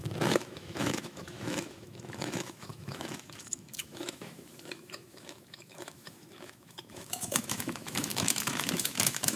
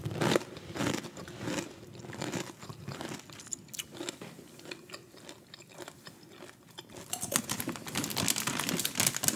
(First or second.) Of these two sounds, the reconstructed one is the first